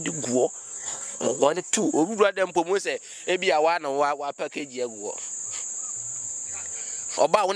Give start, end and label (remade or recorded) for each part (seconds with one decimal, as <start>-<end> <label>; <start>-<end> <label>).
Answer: 0.0-0.6 recorded; 0.6-1.9 remade; 1.9-7.6 recorded